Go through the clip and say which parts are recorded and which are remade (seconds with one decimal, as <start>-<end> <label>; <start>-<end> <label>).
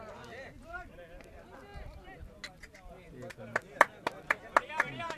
0.0-5.2 recorded